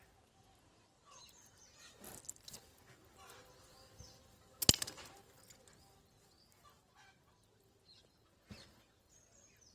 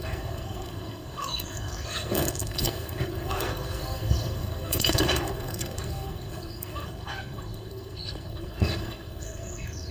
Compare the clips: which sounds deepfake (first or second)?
second